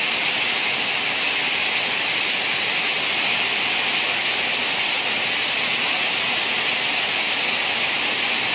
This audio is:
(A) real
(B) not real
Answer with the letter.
A